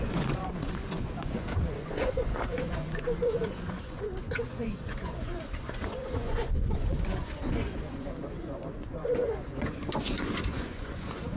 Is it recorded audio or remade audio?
remade